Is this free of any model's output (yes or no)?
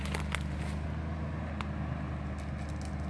yes